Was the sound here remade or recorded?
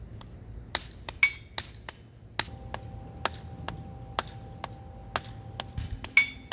recorded